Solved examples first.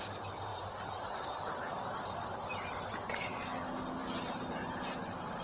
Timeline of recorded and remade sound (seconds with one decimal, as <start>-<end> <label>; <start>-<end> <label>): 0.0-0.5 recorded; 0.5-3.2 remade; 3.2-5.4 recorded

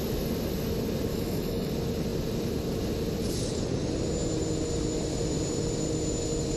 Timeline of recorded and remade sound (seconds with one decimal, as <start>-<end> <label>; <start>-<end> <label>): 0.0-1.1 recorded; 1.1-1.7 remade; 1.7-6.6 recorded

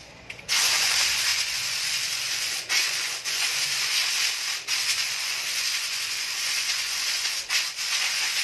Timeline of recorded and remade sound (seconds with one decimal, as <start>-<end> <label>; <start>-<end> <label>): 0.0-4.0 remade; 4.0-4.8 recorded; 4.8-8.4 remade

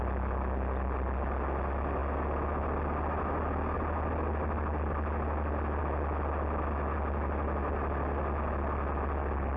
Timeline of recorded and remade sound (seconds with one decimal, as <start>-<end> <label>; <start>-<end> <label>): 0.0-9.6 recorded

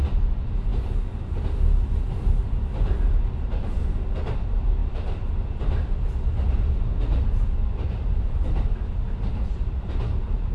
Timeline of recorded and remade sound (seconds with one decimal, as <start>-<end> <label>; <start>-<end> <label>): 0.0-10.5 recorded